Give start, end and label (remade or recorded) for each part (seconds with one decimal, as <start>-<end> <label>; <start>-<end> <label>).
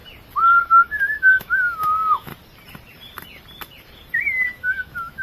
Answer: 0.0-0.6 recorded; 0.6-2.3 remade; 2.3-4.6 recorded; 4.6-5.2 remade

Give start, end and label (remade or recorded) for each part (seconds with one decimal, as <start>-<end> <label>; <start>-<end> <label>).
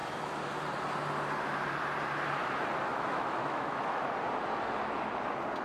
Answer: 0.0-2.9 recorded; 2.9-4.0 remade; 4.0-5.6 recorded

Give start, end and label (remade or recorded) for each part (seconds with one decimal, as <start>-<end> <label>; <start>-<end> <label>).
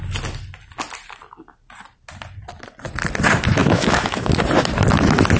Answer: 0.0-3.6 recorded; 3.6-4.3 remade; 4.3-5.4 recorded